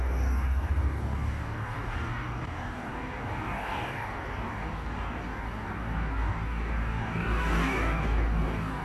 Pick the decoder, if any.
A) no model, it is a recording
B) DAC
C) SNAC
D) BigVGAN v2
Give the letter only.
B